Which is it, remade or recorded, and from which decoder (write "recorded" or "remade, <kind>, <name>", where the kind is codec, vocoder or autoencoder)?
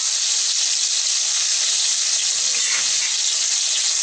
recorded